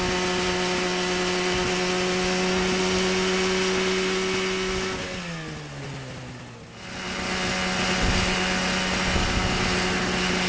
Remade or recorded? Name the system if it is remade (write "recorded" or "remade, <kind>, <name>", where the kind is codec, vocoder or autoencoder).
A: recorded